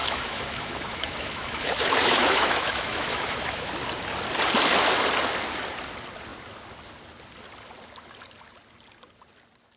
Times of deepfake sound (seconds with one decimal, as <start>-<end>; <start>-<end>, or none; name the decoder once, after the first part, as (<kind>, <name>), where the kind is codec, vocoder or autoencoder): 0.0-3.7 (autoencoder, DAC-VAE)